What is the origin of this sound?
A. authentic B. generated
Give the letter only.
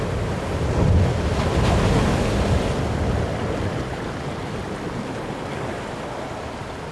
A